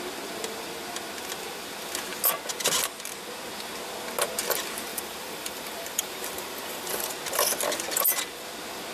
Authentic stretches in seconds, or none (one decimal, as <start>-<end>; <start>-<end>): 0.0-4.9; 7.1-8.9